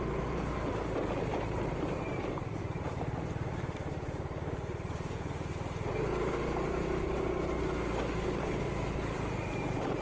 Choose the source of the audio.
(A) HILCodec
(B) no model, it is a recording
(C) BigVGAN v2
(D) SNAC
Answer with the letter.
C